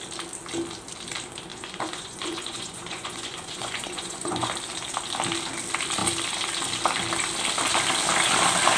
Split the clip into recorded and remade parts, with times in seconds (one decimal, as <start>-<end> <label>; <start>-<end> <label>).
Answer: 0.0-1.5 recorded; 1.5-4.5 remade; 4.5-8.8 recorded